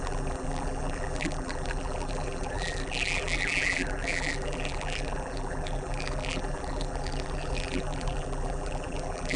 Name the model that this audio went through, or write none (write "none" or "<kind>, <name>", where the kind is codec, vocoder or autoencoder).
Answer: vocoder, BigVGAN v2